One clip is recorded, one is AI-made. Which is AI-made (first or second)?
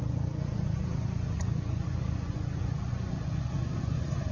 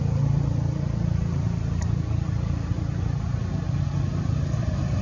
first